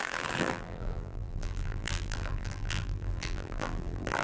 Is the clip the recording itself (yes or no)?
no